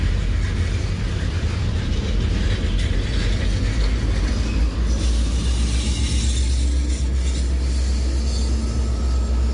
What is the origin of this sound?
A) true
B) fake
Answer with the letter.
A